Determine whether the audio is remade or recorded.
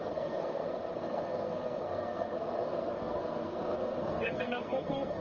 remade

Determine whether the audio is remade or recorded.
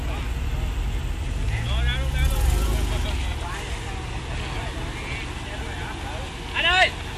recorded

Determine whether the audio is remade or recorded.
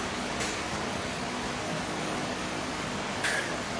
remade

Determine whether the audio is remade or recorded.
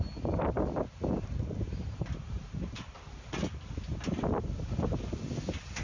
recorded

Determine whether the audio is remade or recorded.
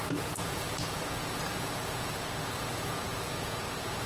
remade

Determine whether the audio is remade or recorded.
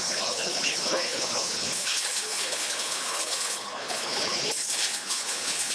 remade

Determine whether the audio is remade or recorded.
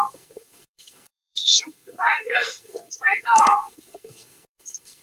remade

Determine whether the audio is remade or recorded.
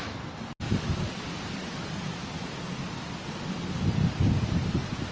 recorded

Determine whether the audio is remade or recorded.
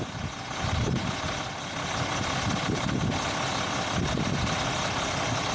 recorded